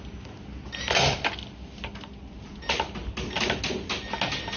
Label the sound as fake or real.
real